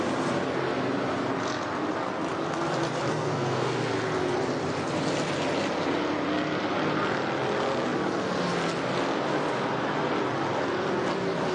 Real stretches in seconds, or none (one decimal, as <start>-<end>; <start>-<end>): 0.0-3.1; 3.9-11.5